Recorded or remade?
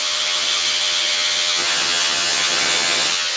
remade